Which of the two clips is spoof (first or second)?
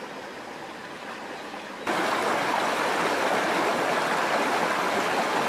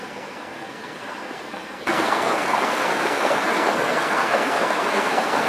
second